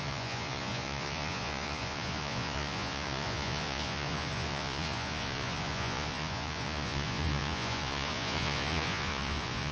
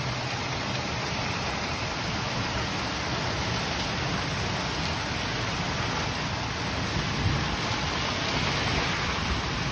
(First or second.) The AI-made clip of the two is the first